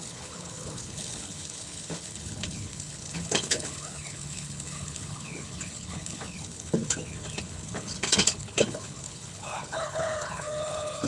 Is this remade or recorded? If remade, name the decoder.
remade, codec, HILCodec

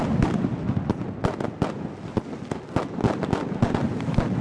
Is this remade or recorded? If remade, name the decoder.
recorded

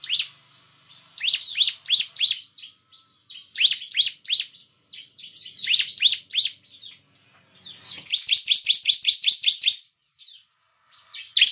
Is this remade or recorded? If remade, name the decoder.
recorded